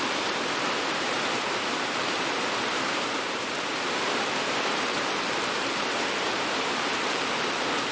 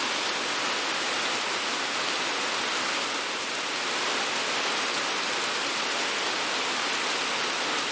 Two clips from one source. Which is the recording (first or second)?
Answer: second